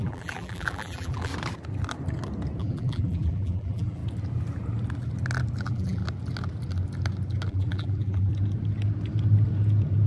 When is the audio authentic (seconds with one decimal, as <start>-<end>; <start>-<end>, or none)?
1.3-2.6; 4.0-5.6; 6.0-7.5; 8.3-10.1